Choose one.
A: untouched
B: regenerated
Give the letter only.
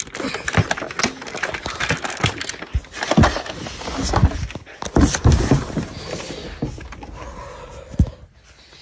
A